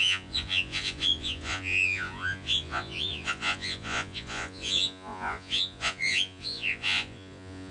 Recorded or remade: remade